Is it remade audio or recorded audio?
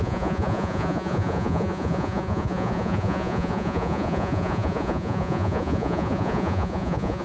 remade